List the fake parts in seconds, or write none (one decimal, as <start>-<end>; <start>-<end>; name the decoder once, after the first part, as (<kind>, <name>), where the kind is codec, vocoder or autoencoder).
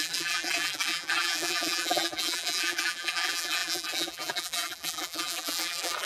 0.0-6.1 (vocoder, BigVGAN v2)